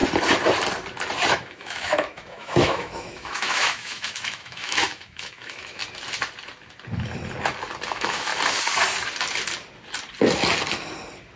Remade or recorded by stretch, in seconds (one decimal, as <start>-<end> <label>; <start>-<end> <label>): 0.0-1.3 recorded; 1.3-5.8 remade; 5.8-7.9 recorded; 7.9-8.3 remade; 8.3-11.4 recorded